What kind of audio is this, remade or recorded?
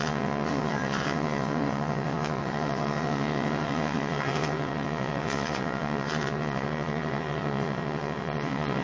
remade